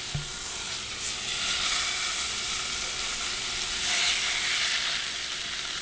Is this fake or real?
real